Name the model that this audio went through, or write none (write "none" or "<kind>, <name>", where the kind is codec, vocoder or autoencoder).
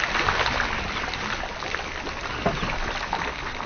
none